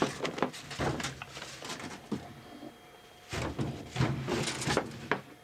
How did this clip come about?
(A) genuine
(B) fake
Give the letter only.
A